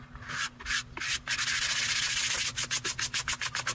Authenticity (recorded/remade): recorded